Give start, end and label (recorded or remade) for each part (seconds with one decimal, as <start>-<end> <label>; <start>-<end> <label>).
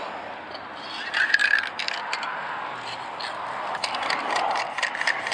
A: 0.0-5.3 recorded